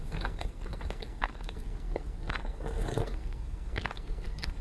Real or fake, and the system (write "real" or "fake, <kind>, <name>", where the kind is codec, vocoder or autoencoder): fake, codec, SNAC